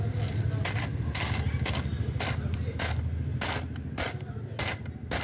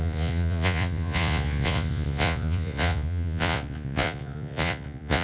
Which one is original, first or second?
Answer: first